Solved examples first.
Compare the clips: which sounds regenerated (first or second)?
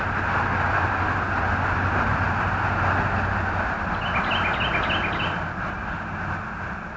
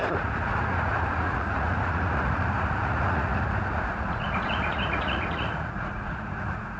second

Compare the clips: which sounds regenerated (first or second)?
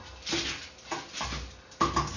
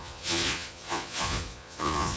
second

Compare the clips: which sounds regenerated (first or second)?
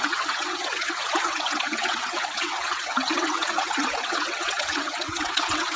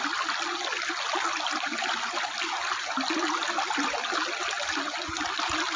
first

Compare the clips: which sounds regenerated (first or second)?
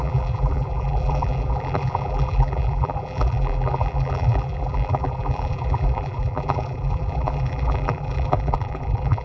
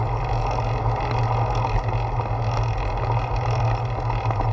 first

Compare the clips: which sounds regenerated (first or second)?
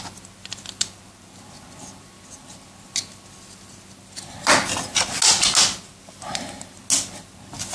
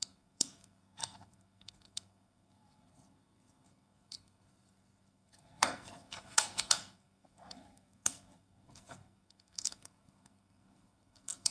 second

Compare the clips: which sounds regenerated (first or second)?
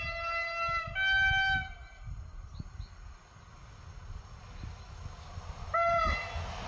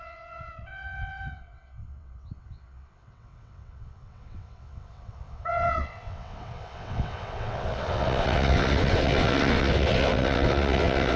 second